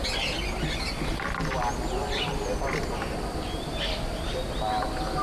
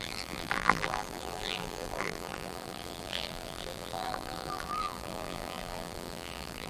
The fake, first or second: second